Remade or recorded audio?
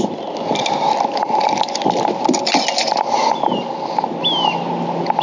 recorded